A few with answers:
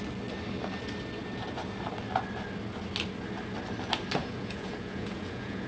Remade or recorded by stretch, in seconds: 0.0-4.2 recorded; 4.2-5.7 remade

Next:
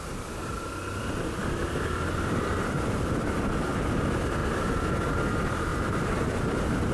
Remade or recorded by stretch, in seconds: 0.0-1.6 recorded; 1.6-3.3 remade; 3.3-4.4 recorded; 4.4-5.0 remade; 5.0-5.7 recorded; 5.7-6.9 remade